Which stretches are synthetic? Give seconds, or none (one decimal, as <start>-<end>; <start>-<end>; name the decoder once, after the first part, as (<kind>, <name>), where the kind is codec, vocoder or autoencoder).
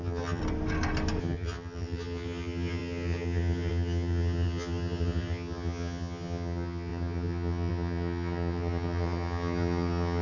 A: 0.0-0.4 (vocoder, HiFi-GAN); 1.2-10.2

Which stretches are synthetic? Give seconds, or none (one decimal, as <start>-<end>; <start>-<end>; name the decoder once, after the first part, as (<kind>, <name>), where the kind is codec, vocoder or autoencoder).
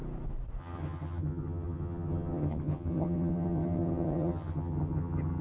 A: 0.6-5.4 (vocoder, HiFi-GAN)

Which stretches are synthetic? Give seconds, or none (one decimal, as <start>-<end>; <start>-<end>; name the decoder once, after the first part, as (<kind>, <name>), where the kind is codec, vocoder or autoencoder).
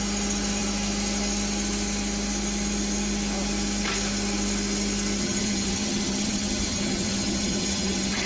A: 5.2-8.3 (vocoder, HiFi-GAN)